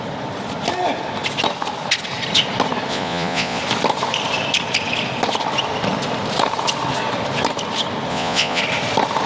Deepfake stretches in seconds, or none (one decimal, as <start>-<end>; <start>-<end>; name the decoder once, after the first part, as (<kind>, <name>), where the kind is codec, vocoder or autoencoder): 2.9-3.6 (vocoder, Vocos); 8.1-8.6